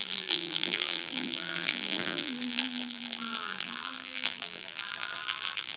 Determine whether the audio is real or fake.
fake